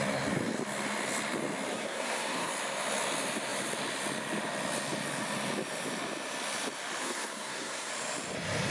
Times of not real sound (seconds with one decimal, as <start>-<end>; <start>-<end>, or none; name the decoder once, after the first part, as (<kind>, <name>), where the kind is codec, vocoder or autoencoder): 1.7-2.5 (codec, SNAC); 7.0-7.9